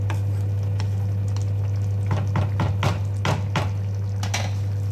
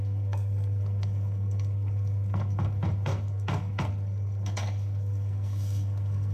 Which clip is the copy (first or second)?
second